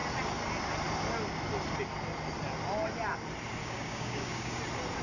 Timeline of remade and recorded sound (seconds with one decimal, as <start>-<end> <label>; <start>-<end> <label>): 0.0-3.6 recorded; 3.6-4.6 remade; 4.6-5.0 recorded